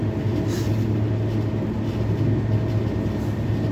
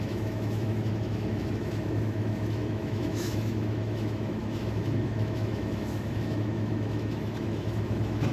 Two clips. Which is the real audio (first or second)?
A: first